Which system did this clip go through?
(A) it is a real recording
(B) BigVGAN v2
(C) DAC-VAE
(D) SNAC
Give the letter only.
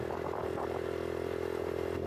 A